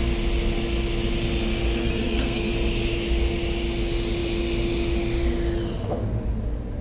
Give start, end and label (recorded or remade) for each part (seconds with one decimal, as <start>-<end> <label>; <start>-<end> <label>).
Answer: 0.0-1.8 recorded; 1.8-2.5 remade; 2.5-6.8 recorded